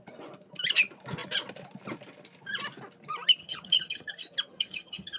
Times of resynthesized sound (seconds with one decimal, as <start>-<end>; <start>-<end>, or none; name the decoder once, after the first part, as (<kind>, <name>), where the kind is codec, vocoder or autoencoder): 3.4-4.1 (vocoder, HiFi-GAN); 4.5-5.2